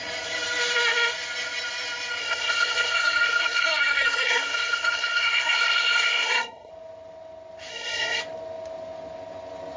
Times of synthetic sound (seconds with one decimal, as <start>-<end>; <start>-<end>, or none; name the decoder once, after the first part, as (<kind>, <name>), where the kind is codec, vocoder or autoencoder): 2.2-6.7 (codec, SNAC); 7.7-8.2